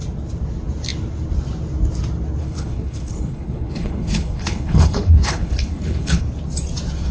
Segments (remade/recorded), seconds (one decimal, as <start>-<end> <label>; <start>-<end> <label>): 0.0-2.4 recorded; 2.4-6.2 remade; 6.2-7.1 recorded